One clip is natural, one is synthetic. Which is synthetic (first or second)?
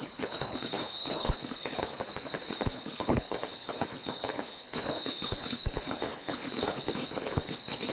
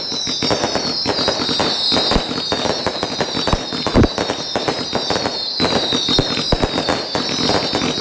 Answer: first